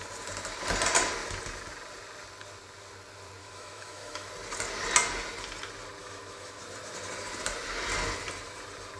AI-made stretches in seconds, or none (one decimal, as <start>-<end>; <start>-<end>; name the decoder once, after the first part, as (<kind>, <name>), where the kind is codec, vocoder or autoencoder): 3.4-4.3 (autoencoder, DAC-VAE); 6.0-6.6